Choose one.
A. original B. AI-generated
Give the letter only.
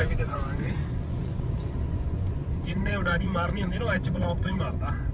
B